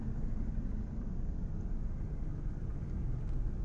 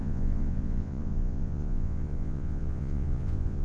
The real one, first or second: first